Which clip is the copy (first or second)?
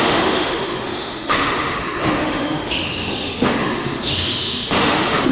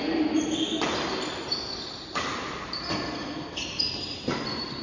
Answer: first